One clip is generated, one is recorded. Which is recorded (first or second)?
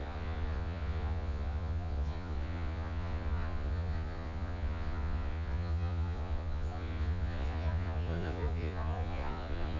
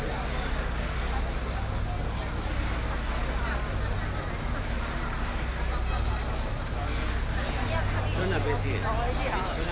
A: second